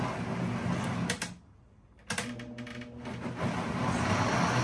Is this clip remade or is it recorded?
recorded